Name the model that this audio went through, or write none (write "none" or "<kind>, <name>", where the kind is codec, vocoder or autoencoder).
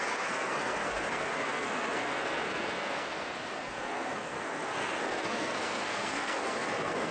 codec, SNAC